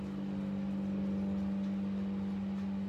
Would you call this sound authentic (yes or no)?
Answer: yes